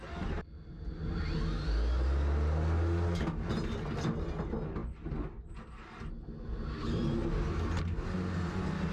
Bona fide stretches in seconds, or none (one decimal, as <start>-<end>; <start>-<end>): 0.0-8.9